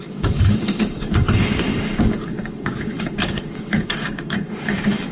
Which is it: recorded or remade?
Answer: remade